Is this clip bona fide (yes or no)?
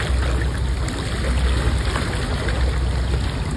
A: yes